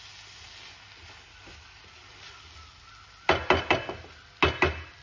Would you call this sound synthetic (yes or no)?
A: no